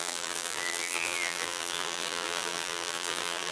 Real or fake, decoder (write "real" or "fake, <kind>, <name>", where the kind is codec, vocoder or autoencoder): fake, vocoder, BigVGAN v2